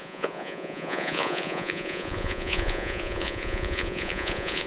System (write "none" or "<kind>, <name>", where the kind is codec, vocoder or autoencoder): vocoder, Vocos